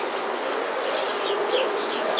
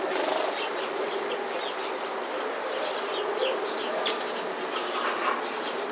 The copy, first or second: first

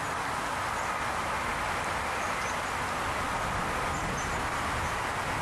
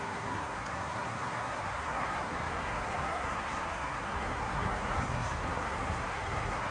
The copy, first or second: second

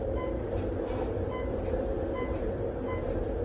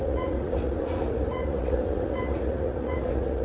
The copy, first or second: second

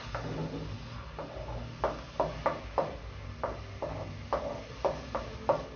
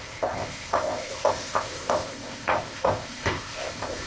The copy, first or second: second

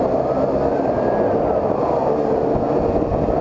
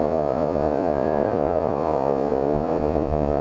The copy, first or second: second